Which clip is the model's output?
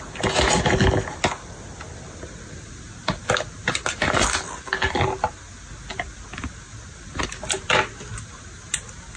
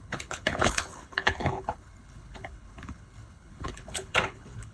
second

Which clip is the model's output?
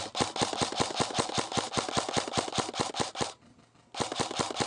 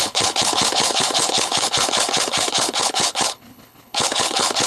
second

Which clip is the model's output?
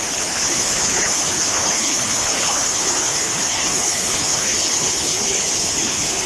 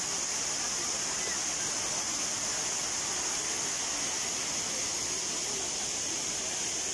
first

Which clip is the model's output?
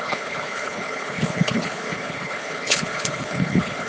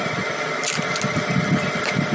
first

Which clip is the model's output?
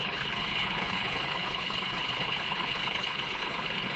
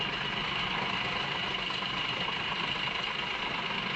first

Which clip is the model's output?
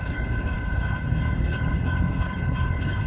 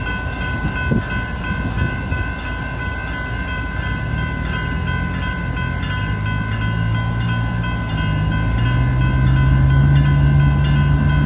first